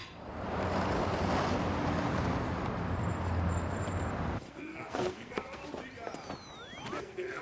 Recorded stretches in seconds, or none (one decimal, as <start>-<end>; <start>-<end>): 0.0-4.4; 5.6-7.0